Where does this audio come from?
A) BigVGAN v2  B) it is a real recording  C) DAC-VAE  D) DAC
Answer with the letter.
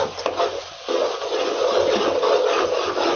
B